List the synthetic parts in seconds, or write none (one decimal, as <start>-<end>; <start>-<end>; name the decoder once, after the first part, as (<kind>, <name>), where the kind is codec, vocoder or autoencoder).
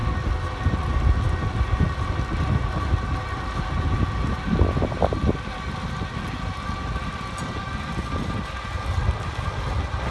none